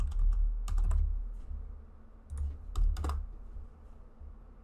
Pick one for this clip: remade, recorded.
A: recorded